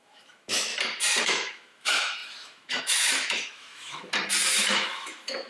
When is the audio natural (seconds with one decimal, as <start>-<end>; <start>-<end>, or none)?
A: 0.7-1.2; 4.0-4.6